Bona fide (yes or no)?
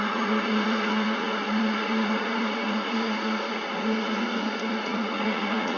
no